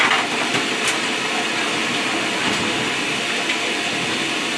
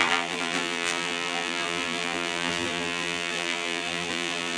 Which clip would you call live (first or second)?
first